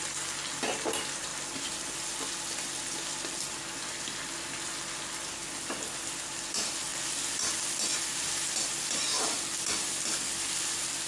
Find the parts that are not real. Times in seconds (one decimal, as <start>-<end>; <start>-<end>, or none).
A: none

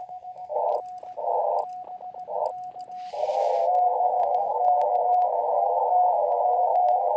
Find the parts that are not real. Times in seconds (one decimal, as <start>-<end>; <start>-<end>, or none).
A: 0.0-0.6; 3.1-7.2

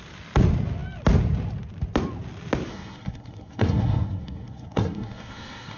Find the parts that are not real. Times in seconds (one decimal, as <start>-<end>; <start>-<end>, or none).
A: 2.7-5.8

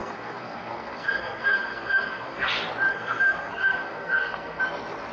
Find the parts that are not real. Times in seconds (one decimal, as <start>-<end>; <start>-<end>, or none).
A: 0.0-2.5; 2.9-4.6